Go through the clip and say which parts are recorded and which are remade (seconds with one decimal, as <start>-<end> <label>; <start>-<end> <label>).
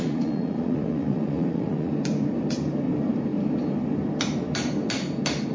0.0-1.9 remade; 1.9-5.5 recorded